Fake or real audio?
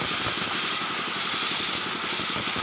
real